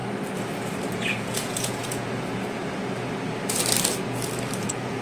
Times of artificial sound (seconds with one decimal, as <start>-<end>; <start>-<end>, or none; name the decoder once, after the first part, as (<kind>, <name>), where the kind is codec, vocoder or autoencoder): 0.9-2.6 (vocoder, Vocos); 4.6-5.0